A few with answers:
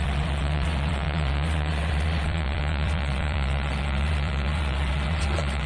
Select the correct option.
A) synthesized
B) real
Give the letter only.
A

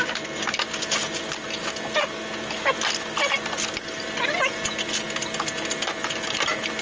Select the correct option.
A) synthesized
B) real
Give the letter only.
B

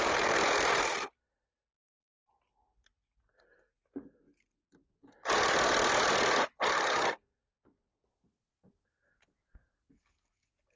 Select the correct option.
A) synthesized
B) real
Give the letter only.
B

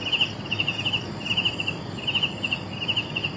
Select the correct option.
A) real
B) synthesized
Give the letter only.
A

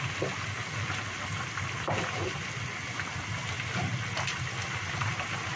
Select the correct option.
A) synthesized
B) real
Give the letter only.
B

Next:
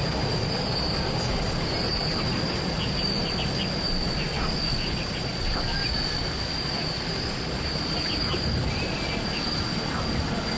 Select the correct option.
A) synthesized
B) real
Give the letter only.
B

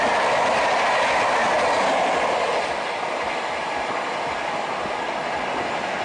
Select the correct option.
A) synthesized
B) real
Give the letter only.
B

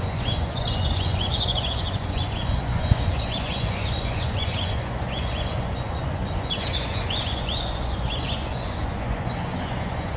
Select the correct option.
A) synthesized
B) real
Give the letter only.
A